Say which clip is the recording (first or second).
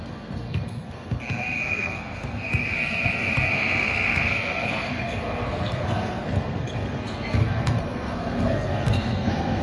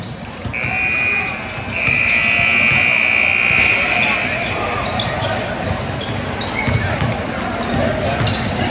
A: second